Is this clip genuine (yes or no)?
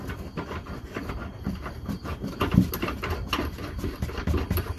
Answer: yes